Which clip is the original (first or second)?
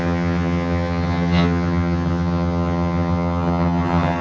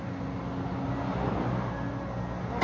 second